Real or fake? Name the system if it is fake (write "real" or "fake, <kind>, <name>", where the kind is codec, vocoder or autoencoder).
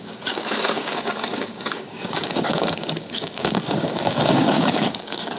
fake, codec, DAC